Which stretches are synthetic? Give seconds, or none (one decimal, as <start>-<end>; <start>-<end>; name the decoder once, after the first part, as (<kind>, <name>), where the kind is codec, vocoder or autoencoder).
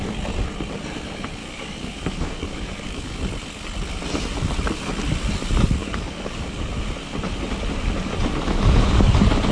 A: 1.4-3.2 (codec, DAC); 5.8-6.7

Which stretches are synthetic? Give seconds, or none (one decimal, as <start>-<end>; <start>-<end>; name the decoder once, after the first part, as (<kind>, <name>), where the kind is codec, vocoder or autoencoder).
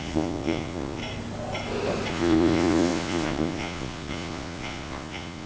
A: 0.0-1.0 (vocoder, Vocos); 2.1-5.5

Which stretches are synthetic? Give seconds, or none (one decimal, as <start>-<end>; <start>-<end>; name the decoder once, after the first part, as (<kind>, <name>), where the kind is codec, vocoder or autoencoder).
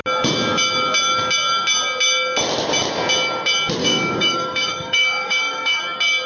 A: 3.8-5.8 (codec, DAC)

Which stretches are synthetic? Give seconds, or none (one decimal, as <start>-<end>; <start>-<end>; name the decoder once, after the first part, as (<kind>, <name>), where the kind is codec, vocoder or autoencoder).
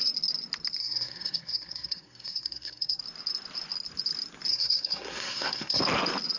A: 0.8-3.0 (codec, SNAC); 4.5-5.8